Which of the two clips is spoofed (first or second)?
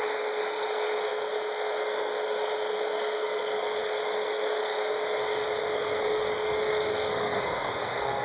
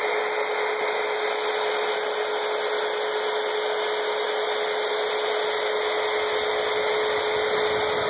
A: first